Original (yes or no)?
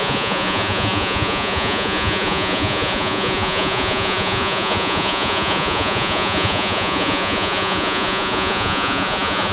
no